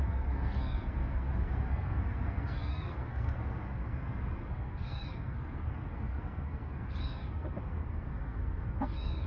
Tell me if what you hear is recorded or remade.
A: remade